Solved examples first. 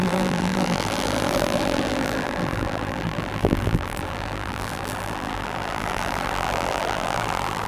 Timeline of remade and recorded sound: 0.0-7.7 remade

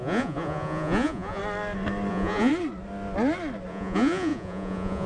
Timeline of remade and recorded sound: 0.0-1.4 remade; 1.4-2.1 recorded; 2.1-2.5 remade; 2.5-3.7 recorded; 3.7-5.1 remade

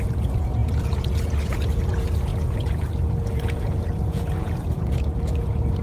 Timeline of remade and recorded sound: 0.0-5.8 remade